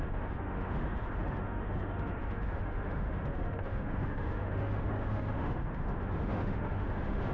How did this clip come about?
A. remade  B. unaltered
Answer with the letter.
A